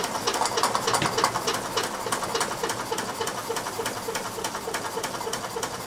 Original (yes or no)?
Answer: yes